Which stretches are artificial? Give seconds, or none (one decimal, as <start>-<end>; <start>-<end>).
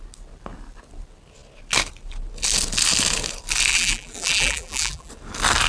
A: 3.7-5.1